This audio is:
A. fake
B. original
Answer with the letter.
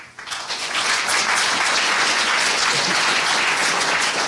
A